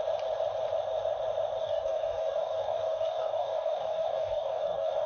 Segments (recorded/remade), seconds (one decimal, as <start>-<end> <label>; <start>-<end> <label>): 0.0-1.6 recorded; 1.6-5.1 remade